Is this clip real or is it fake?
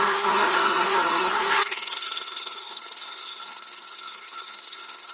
fake